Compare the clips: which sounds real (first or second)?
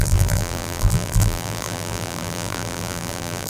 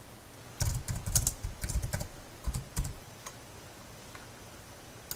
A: second